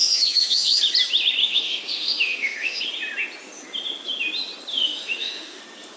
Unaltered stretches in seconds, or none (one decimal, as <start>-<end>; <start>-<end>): 0.8-1.4; 2.8-4.7; 5.6-6.0